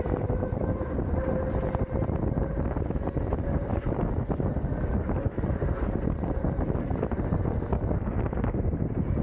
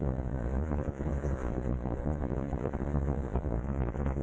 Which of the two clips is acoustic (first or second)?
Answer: first